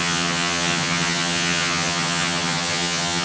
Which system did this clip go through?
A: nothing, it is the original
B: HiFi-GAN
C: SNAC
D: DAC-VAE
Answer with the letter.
B